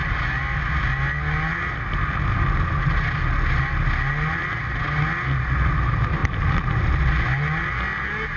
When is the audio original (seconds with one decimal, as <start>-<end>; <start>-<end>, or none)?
0.0-6.2; 6.8-8.4